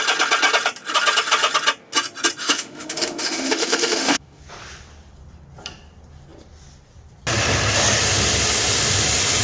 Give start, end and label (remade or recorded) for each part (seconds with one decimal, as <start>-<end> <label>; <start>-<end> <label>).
0.0-2.4 recorded; 2.4-4.4 remade; 4.4-9.4 recorded